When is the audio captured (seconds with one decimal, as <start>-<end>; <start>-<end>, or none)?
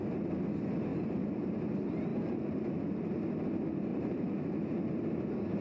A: 0.0-0.9; 1.7-3.9; 4.8-5.6